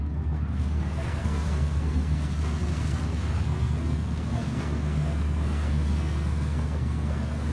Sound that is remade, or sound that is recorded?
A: remade